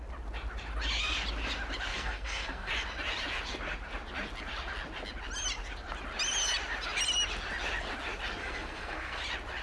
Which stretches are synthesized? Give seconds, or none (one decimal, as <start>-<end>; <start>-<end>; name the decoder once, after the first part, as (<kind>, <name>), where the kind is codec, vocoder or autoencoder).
1.9-2.7 (codec, SNAC); 8.4-9.2